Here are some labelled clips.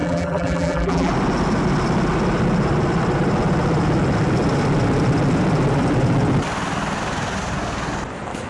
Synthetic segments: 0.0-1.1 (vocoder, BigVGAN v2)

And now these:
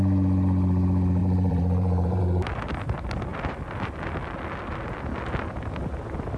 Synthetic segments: 1.2-2.2 (vocoder, BigVGAN v2)

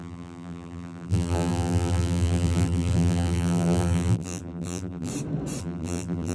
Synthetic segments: 0.0-5.1 (vocoder, BigVGAN v2); 5.6-6.3

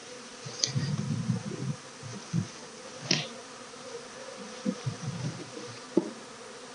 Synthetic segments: 0.0-0.6 (vocoder, BigVGAN v2); 2.1-5.8